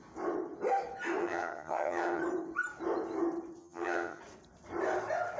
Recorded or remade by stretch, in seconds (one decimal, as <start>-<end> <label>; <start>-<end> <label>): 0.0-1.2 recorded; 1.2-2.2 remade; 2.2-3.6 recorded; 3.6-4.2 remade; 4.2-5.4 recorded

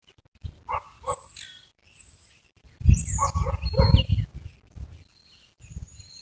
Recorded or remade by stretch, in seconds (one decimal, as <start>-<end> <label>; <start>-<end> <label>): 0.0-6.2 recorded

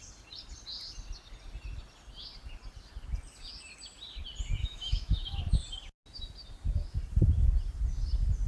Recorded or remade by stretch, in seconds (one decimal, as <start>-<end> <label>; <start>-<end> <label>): 0.0-4.6 recorded; 4.6-5.4 remade; 5.4-8.5 recorded

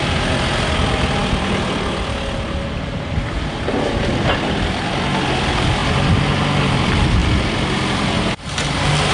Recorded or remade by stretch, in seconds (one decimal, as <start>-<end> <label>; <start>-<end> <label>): 0.0-9.1 recorded

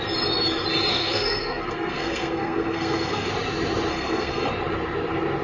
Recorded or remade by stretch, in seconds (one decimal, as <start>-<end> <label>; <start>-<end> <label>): 0.0-0.9 recorded; 0.9-3.3 remade; 3.3-3.9 recorded; 3.9-4.5 remade; 4.5-5.4 recorded